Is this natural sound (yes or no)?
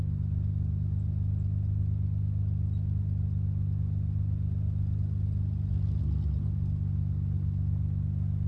yes